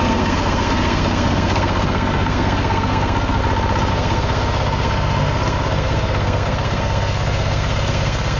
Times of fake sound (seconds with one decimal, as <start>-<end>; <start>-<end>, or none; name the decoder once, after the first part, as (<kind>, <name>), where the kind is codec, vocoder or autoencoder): 0.0-3.4 (codec, SNAC); 3.9-8.4